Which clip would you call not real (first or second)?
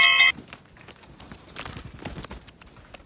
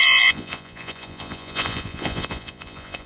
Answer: second